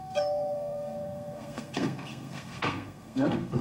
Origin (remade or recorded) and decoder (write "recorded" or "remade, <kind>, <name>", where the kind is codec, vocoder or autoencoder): remade, codec, SNAC